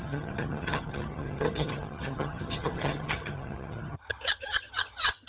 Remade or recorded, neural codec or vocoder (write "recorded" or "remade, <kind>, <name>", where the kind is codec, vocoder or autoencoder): remade, vocoder, HiFi-GAN